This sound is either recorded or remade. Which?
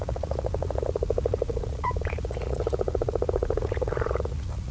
remade